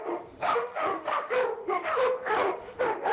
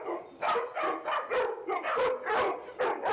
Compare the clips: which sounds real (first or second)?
second